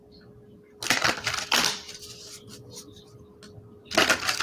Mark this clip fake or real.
real